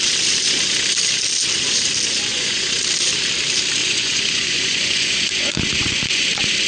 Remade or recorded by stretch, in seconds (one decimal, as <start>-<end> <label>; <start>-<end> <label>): 0.0-2.3 recorded; 2.3-2.8 remade; 2.8-3.8 recorded; 3.8-6.7 remade